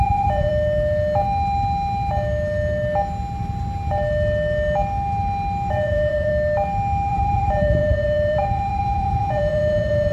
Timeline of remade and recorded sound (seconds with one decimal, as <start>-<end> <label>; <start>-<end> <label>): 0.0-0.5 remade; 0.5-5.7 recorded; 5.7-6.3 remade; 6.3-7.1 recorded; 7.1-10.1 remade